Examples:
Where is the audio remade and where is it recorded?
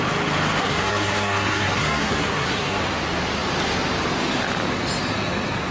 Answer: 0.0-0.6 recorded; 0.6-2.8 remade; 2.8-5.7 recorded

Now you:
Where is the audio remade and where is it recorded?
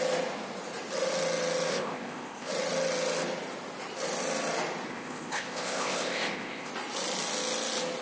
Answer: 0.0-1.7 recorded; 1.7-2.5 remade; 2.5-4.9 recorded; 4.9-6.7 remade; 6.7-8.0 recorded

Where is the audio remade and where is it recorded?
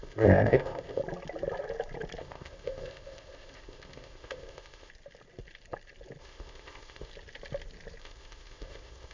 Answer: 0.0-1.0 remade; 1.0-2.2 recorded; 2.2-4.9 remade; 4.9-6.2 recorded; 6.2-7.1 remade; 7.1-8.0 recorded; 8.0-9.1 remade